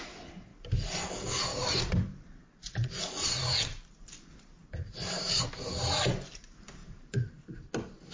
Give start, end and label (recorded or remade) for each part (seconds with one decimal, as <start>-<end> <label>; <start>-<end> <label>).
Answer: 0.0-0.5 recorded; 0.5-1.1 remade; 1.1-1.5 recorded; 1.5-3.0 remade; 3.0-4.6 recorded; 4.6-5.7 remade; 5.7-6.8 recorded; 6.8-7.4 remade; 7.4-8.1 recorded